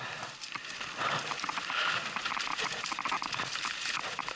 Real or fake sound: fake